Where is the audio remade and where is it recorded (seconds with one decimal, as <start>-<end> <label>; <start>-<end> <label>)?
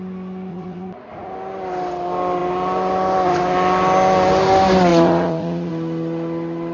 0.0-0.5 recorded; 0.5-1.1 remade; 1.1-4.9 recorded; 4.9-5.7 remade; 5.7-6.7 recorded